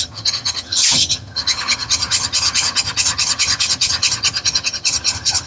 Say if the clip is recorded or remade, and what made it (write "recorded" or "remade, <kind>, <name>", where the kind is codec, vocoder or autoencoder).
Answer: remade, vocoder, HiFi-GAN